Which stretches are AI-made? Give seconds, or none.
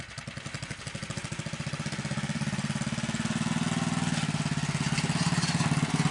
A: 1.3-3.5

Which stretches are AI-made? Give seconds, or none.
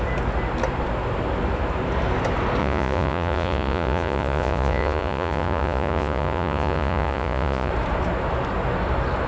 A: 2.6-7.7